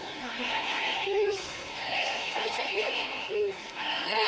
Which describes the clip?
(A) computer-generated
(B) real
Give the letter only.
A